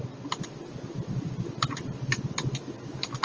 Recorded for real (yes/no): no